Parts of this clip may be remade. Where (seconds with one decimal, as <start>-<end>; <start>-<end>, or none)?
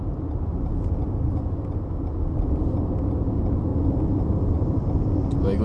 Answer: none